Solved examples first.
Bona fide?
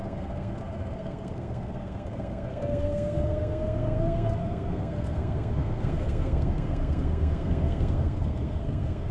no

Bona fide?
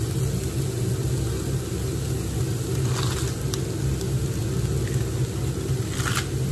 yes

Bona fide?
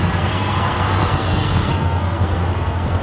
no